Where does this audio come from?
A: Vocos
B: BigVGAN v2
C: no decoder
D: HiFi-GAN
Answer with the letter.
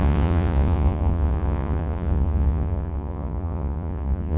A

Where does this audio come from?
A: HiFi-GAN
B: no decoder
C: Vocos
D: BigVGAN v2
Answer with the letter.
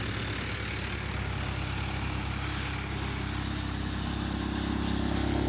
B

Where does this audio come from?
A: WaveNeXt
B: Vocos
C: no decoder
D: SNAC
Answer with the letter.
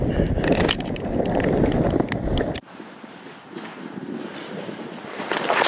C